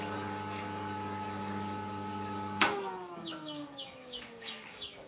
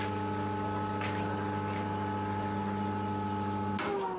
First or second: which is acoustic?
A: second